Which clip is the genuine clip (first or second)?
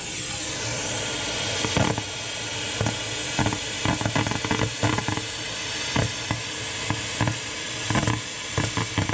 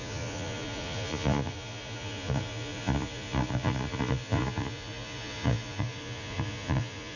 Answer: first